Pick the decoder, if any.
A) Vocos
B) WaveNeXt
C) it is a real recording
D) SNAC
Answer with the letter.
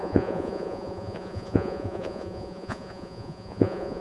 A